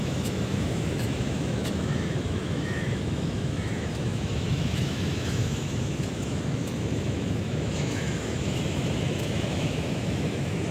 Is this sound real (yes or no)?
no